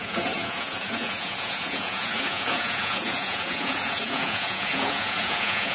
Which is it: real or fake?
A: fake